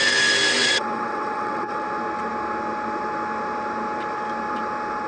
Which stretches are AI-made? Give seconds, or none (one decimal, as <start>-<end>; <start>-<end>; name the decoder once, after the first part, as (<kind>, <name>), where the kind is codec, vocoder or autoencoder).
0.6-1.8 (vocoder, WaveNeXt)